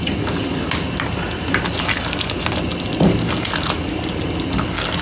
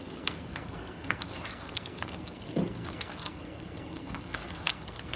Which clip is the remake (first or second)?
second